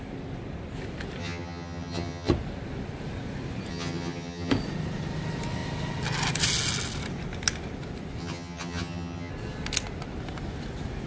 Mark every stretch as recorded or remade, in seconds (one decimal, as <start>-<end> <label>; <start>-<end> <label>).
0.0-1.2 recorded; 1.2-2.3 remade; 2.3-3.7 recorded; 3.7-4.5 remade; 4.5-8.2 recorded; 8.2-9.3 remade; 9.3-11.1 recorded